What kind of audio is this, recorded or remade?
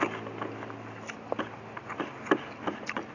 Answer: recorded